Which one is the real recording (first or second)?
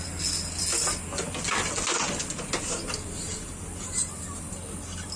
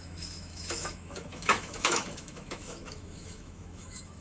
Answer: first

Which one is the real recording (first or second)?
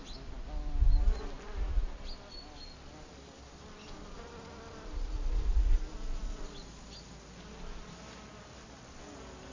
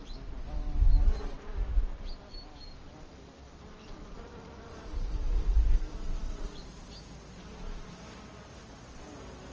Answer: first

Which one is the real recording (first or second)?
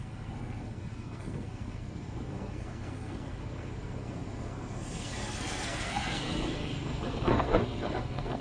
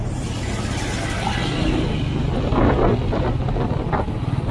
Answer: second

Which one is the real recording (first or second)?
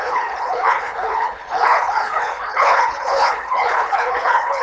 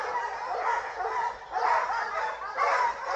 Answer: second